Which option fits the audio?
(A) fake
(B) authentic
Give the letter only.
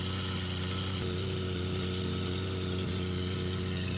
B